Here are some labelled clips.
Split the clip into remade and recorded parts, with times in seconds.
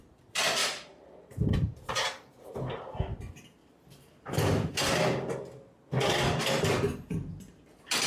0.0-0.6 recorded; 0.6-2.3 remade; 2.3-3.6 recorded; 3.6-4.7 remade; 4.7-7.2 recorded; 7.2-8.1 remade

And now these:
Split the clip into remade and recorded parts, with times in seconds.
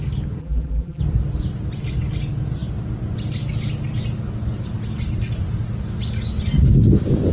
0.0-0.4 recorded; 0.4-1.0 remade; 1.0-7.3 recorded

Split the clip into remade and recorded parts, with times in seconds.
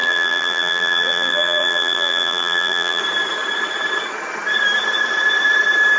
0.0-3.0 remade; 3.0-6.0 recorded